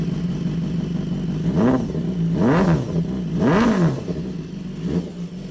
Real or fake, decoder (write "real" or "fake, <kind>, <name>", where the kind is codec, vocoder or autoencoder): real